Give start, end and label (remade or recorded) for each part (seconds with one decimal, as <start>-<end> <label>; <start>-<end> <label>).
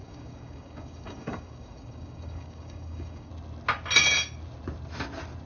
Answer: 0.0-3.3 remade; 3.3-5.5 recorded